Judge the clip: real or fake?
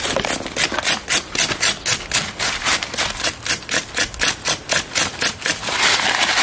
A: real